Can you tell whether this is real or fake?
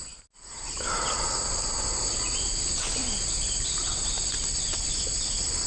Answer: real